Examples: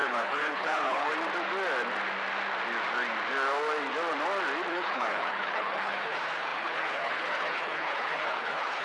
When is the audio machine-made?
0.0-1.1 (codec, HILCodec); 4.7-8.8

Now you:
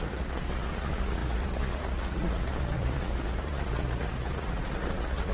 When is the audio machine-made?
0.0-5.3 (vocoder, Vocos)

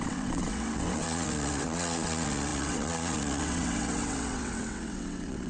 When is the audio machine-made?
0.0-5.5 (vocoder, WaveNeXt)

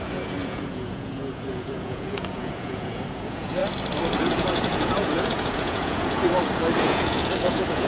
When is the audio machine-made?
0.0-3.6 (vocoder, Vocos); 4.2-6.2; 6.8-7.9

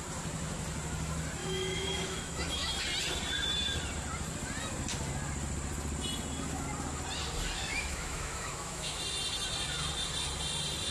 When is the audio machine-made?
1.4-2.7 (autoencoder, DAC-VAE); 7.7-9.0

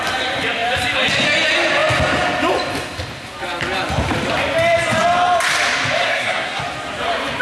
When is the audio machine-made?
6.0-6.6 (codec, SNAC)

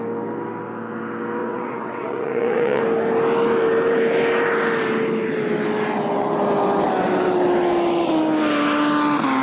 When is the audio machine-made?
1.4-2.8 (vocoder, WaveNeXt)